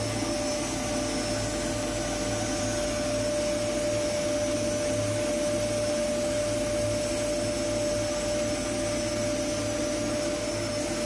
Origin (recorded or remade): recorded